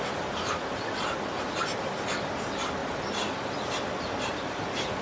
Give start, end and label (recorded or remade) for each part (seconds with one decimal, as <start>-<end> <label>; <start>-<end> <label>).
0.0-5.0 recorded